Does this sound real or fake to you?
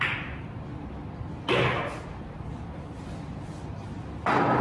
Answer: real